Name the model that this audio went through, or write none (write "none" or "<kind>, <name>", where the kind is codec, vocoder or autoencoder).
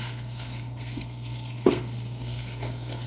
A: codec, SNAC